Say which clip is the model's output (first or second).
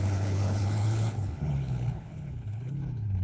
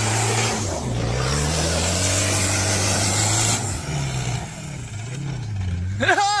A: first